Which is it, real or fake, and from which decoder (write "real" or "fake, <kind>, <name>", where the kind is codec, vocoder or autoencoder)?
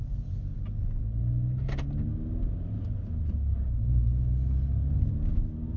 real